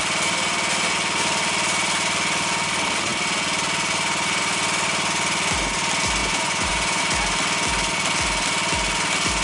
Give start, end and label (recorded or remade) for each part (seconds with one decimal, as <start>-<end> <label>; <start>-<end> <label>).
0.0-6.2 recorded; 6.2-7.0 remade; 7.0-9.4 recorded